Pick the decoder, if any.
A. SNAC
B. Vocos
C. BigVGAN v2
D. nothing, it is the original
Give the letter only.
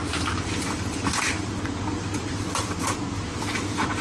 C